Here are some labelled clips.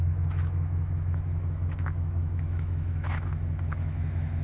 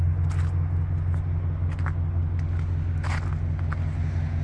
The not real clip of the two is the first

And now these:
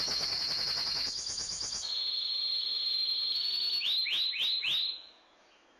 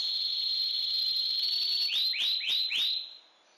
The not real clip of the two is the first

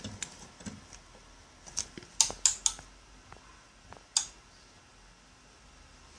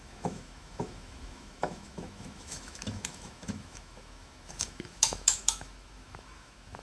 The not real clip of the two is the second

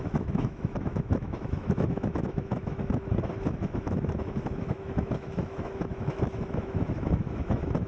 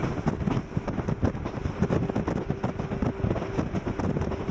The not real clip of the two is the first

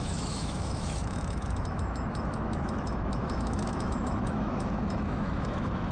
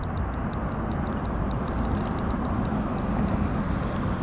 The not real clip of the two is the first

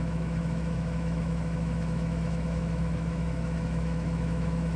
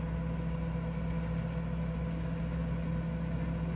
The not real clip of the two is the first